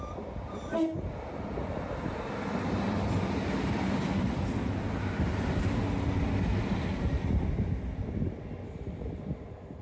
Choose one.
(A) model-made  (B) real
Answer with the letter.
B